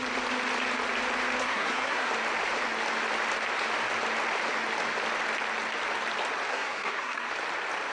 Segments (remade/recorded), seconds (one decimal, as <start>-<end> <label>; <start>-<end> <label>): 0.0-1.4 recorded; 1.4-2.1 remade; 2.1-6.5 recorded; 6.5-7.3 remade; 7.3-7.9 recorded